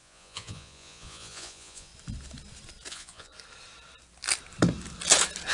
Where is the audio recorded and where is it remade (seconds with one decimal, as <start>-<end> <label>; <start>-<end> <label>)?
0.0-1.9 remade; 1.9-2.9 recorded; 2.9-3.3 remade; 3.3-5.5 recorded